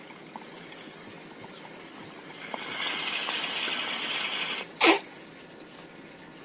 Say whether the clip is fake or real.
real